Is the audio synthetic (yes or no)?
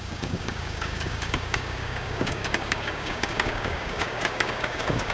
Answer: yes